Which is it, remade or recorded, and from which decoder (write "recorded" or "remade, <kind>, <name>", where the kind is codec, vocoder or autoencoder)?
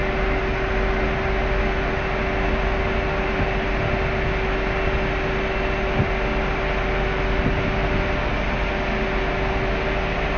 recorded